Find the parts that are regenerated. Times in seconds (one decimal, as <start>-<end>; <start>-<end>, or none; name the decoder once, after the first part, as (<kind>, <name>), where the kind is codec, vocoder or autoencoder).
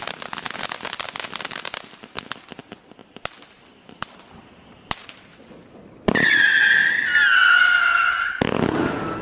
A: none